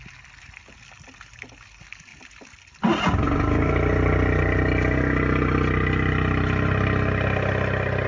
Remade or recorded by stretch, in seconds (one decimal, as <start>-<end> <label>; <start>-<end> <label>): 0.0-8.1 recorded